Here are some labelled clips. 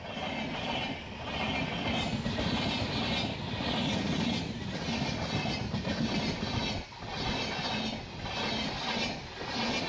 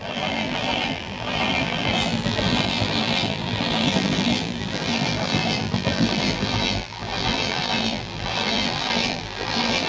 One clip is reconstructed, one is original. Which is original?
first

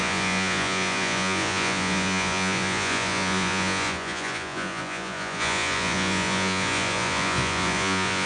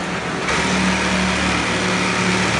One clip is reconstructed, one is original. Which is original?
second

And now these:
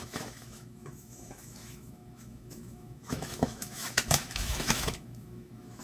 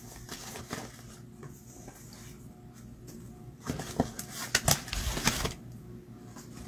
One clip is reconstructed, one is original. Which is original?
second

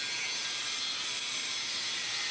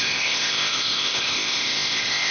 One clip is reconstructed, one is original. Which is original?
first